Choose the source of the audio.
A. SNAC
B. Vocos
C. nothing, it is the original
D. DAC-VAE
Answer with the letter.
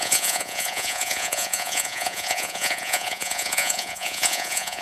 B